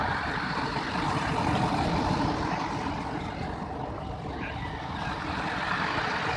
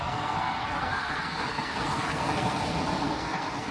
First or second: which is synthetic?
second